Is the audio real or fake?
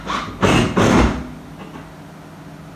real